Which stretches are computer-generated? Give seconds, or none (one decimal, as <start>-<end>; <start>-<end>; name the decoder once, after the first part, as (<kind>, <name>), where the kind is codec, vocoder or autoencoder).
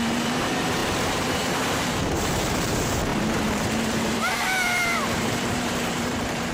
0.0-6.5 (vocoder, BigVGAN v2)